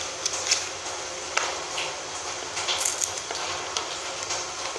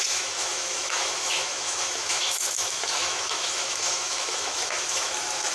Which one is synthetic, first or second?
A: second